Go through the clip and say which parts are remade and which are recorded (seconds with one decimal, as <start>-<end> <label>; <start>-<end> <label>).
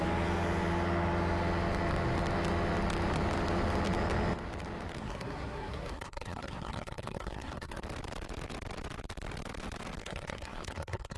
0.0-5.0 recorded; 5.0-7.8 remade; 7.8-10.0 recorded; 10.0-11.2 remade